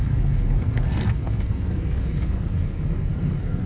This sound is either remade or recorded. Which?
remade